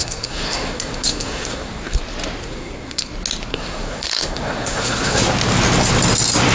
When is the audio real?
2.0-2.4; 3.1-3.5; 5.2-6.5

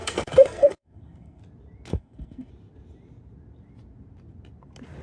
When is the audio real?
1.4-1.9; 2.5-5.0

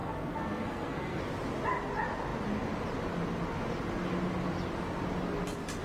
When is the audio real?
1.2-5.8

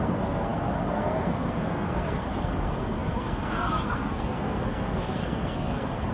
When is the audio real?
none

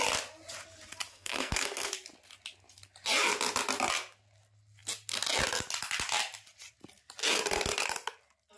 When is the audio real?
0.0-1.1; 1.9-8.6